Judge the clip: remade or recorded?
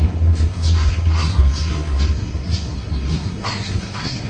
remade